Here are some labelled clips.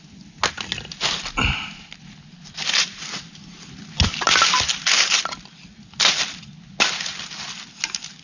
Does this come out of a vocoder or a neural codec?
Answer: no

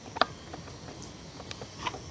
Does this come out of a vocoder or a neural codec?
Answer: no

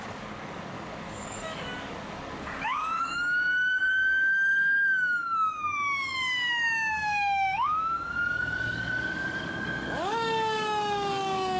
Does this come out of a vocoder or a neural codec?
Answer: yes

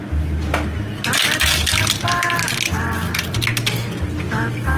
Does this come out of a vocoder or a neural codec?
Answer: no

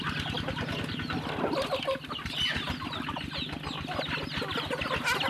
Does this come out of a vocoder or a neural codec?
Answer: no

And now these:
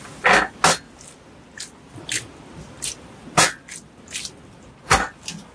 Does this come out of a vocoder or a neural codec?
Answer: no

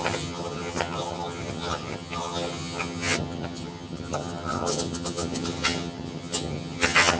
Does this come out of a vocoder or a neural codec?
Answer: yes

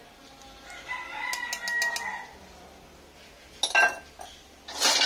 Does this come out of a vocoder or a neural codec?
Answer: no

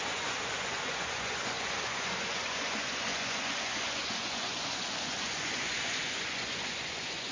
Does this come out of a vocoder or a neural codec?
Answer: yes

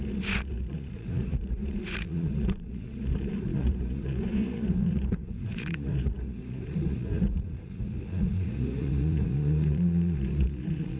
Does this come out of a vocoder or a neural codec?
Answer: yes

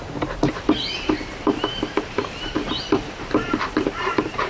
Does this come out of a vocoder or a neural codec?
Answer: yes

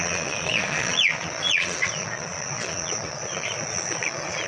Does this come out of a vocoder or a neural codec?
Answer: yes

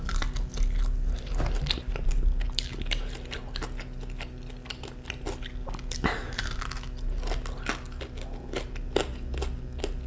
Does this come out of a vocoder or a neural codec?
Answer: no